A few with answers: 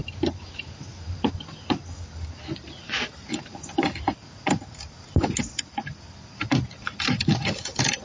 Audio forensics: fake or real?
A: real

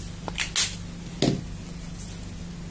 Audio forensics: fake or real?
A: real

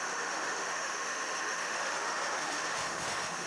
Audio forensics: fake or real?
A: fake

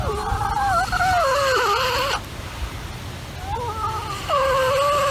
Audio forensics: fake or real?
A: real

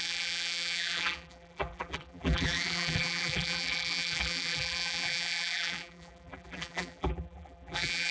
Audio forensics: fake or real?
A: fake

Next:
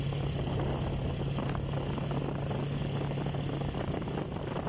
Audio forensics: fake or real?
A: real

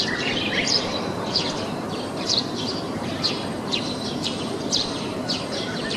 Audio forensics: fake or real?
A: fake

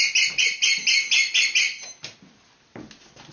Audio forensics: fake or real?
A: real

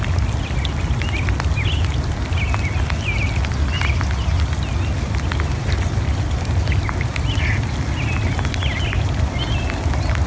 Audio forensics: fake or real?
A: real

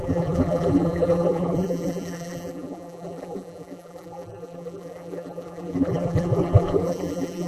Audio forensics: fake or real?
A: fake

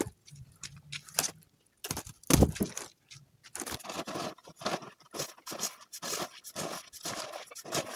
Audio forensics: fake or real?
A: real